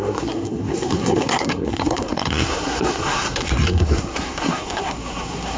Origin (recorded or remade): remade